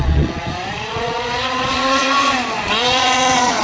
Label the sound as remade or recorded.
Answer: remade